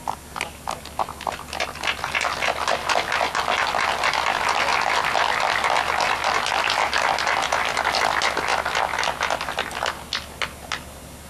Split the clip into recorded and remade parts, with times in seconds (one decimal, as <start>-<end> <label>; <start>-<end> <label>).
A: 0.0-11.3 recorded